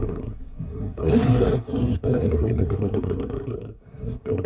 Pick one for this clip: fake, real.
fake